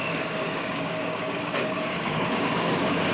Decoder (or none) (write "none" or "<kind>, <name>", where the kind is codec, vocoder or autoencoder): codec, DAC